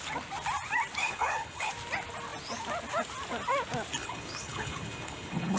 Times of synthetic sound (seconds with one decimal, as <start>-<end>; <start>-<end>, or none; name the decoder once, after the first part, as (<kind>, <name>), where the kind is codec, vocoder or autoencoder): 1.0-1.7 (codec, HILCodec); 4.0-5.6